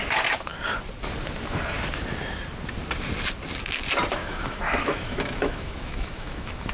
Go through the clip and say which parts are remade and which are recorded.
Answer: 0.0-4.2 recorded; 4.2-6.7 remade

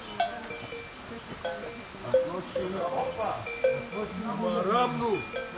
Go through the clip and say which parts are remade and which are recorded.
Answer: 0.0-2.5 recorded; 2.5-3.1 remade; 3.1-5.6 recorded

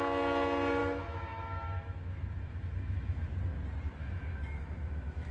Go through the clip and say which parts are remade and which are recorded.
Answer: 0.0-0.8 recorded; 0.8-3.3 remade; 3.3-4.0 recorded; 4.0-5.3 remade

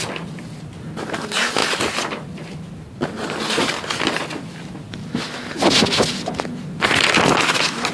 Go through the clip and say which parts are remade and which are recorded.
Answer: 0.0-7.9 recorded

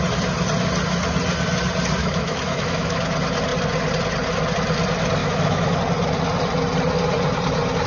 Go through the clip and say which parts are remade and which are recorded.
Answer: 0.0-2.0 recorded; 2.0-3.0 remade; 3.0-5.2 recorded; 5.2-5.8 remade; 5.8-7.9 recorded

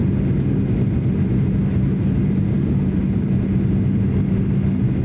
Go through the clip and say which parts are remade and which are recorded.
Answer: 0.0-5.0 recorded

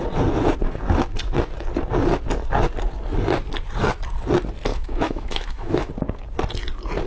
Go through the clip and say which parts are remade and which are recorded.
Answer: 0.0-4.7 recorded; 4.7-5.9 remade; 5.9-7.1 recorded

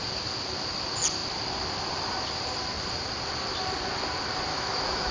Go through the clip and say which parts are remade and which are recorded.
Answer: 0.0-4.5 recorded; 4.5-5.1 remade